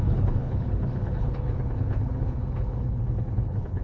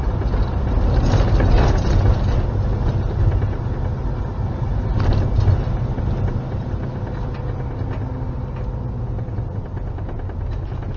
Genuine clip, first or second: second